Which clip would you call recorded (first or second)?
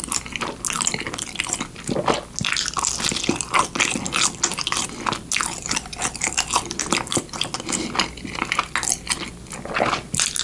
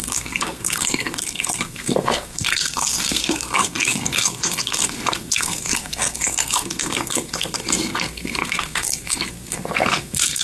first